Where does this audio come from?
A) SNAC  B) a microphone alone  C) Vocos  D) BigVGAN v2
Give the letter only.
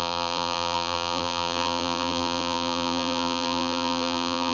D